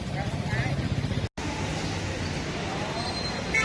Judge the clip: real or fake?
real